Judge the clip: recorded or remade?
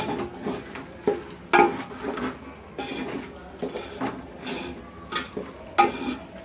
recorded